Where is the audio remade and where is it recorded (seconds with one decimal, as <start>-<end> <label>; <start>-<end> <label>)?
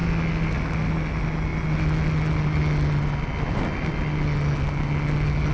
0.0-5.5 recorded